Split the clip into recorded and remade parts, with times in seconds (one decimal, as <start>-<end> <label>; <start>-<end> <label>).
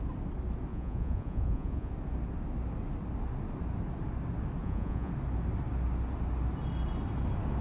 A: 0.0-0.7 recorded; 0.7-1.9 remade; 1.9-4.6 recorded; 4.6-5.1 remade; 5.1-7.6 recorded